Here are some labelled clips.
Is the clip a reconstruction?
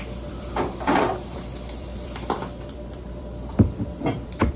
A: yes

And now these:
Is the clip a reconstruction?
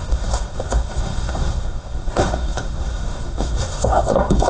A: yes